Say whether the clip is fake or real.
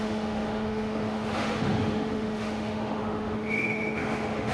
fake